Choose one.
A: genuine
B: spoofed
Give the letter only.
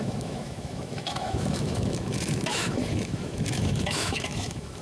B